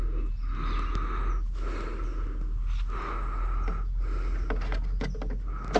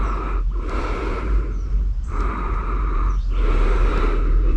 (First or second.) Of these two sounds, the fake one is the second